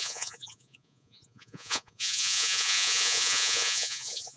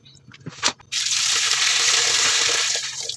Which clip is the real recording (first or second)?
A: second